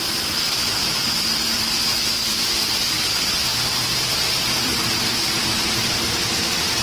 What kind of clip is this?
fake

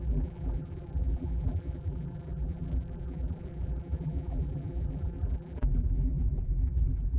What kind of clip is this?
fake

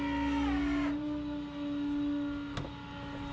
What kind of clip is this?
real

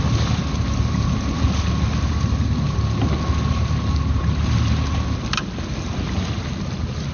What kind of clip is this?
real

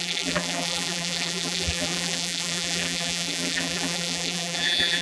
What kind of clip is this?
fake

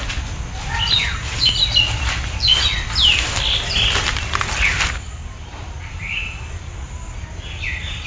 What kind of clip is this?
real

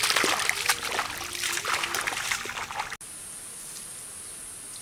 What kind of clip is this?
real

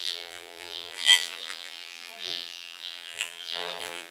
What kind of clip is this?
fake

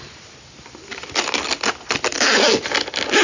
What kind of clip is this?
real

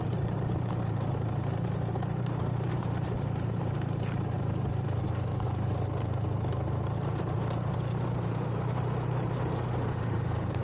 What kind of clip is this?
fake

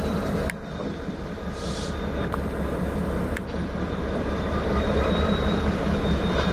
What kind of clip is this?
fake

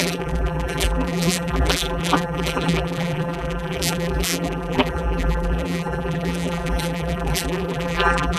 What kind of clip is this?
fake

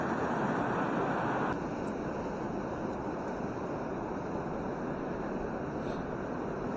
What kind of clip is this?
real